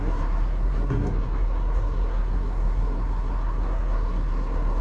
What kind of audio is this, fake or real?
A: fake